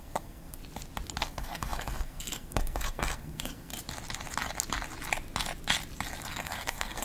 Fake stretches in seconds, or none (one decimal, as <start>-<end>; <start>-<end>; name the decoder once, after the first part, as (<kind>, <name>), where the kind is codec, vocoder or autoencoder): 0.0-0.6 (codec, SNAC); 1.2-3.7; 6.3-7.0